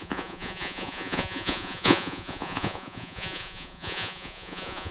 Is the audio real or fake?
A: fake